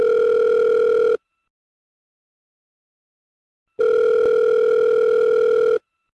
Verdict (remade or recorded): recorded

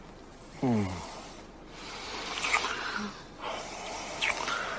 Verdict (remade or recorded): recorded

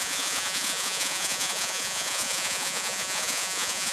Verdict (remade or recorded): remade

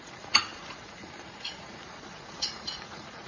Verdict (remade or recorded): remade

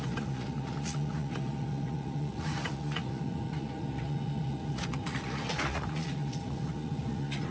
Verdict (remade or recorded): remade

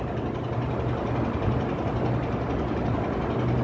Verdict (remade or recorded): recorded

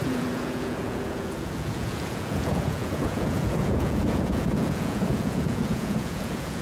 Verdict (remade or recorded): remade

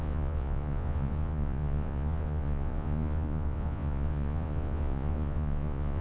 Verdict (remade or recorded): remade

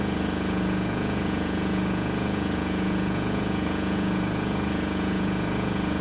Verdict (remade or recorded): remade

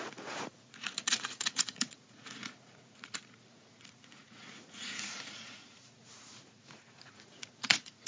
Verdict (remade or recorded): remade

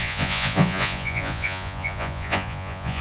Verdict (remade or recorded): remade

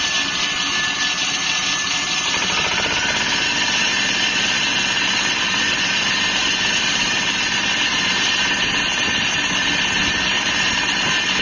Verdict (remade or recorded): recorded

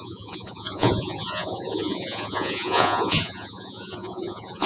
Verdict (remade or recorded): remade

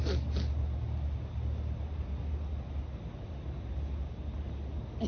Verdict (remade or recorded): recorded